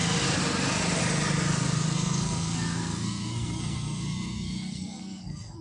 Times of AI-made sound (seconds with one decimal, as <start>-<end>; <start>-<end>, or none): 1.9-5.6